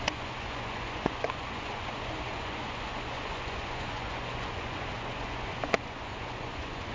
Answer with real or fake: fake